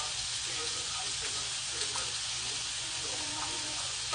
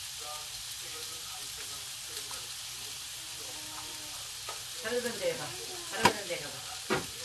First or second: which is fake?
first